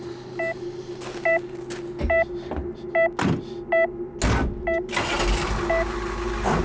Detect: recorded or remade recorded